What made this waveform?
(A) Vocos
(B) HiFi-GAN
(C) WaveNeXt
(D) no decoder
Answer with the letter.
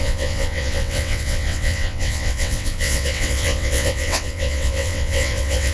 C